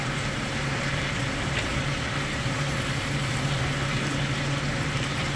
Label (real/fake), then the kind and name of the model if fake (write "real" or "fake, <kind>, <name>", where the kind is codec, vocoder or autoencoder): fake, vocoder, BigVGAN v2